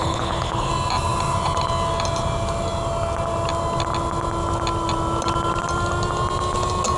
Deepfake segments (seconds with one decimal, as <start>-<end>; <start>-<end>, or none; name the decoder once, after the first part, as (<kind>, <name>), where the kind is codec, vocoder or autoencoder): 0.0-0.7 (codec, HILCodec)

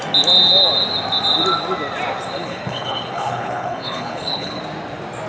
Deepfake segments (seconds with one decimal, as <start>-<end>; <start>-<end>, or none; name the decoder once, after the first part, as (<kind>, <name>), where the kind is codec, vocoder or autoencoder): 2.4-4.6 (codec, HILCodec)

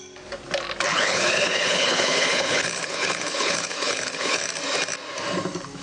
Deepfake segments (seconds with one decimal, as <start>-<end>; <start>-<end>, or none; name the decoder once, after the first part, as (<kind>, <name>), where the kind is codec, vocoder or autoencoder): 0.9-4.4 (codec, HILCodec)

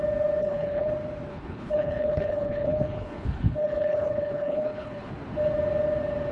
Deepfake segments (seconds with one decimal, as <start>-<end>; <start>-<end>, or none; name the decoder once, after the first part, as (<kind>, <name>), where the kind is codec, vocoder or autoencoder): 0.4-0.9 (codec, HILCodec); 1.3-5.1